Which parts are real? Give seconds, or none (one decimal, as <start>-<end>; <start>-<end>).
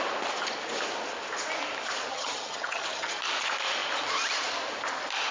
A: 0.0-2.1; 3.1-5.3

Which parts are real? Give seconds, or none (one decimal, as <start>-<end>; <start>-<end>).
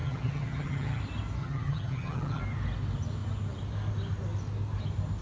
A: 1.0-1.4; 2.4-5.2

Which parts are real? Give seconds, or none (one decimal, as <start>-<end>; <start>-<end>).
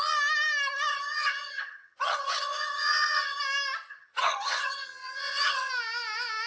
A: 0.0-0.9; 3.4-3.9; 5.7-6.5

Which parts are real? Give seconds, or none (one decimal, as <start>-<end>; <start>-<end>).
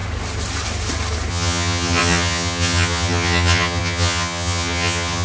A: 0.0-1.3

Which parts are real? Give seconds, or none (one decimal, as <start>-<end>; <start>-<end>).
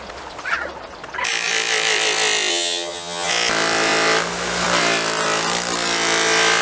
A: 0.0-2.5; 3.3-6.6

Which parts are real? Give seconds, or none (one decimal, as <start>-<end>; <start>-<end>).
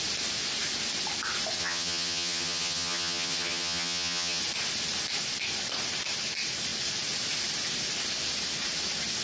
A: 0.0-1.6; 4.4-9.2